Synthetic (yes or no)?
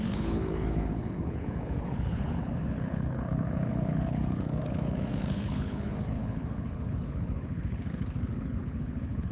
yes